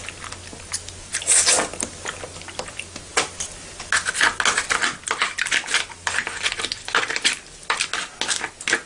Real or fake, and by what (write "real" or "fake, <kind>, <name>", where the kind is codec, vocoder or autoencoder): real